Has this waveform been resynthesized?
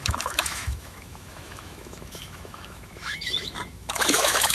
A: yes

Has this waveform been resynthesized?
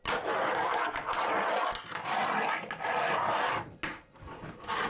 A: no